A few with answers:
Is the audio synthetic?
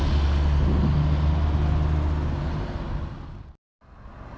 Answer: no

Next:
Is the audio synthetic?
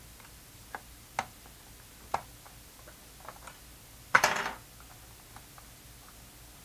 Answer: no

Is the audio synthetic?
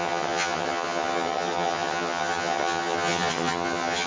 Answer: yes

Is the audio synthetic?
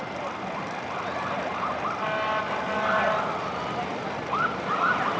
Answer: no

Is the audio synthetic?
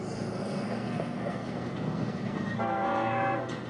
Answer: yes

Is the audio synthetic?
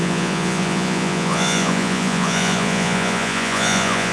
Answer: yes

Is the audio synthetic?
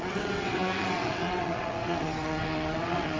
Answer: yes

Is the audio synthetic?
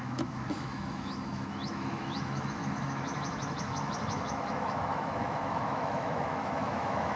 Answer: yes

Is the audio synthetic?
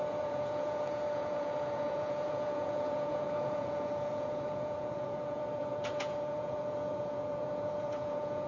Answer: yes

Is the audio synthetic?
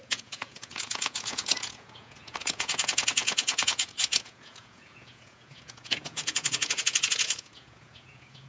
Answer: yes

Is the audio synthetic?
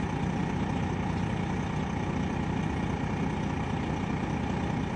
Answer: no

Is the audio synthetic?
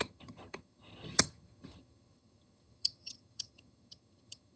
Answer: yes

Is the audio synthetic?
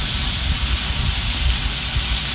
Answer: no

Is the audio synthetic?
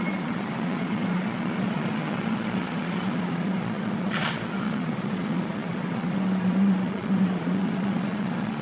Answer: yes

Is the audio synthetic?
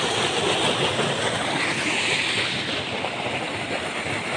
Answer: no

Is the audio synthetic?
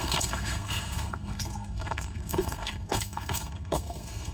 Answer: yes